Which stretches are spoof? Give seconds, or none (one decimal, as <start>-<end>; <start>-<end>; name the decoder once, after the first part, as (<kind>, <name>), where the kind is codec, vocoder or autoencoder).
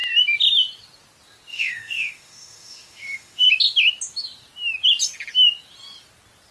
1.5-3.5 (autoencoder, DAC-VAE)